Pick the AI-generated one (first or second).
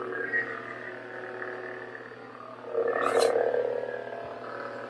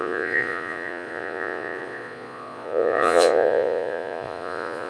second